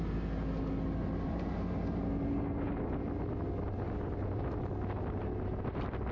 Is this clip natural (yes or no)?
yes